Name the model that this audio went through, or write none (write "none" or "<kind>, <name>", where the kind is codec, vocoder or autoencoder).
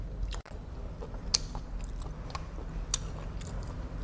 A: none